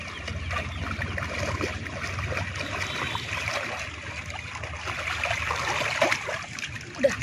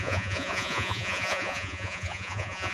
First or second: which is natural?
first